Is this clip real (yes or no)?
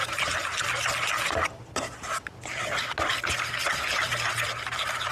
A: yes